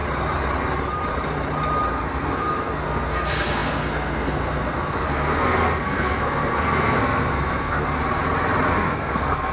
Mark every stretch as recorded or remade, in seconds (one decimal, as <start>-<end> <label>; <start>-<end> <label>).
0.0-1.9 recorded; 1.9-8.0 remade; 8.0-8.7 recorded; 8.7-9.5 remade